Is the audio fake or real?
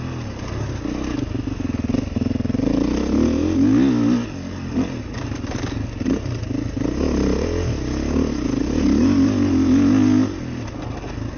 real